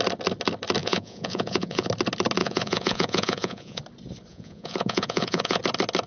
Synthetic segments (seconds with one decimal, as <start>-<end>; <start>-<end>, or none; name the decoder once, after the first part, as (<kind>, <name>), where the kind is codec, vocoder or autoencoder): 0.8-1.9 (vocoder, Vocos); 2.4-3.8; 4.3-5.6